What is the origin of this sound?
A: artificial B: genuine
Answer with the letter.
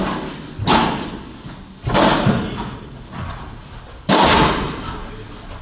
B